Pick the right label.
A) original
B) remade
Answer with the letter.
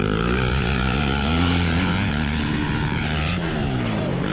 B